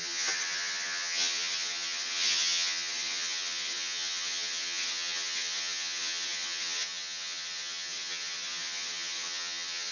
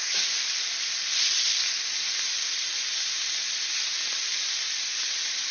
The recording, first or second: second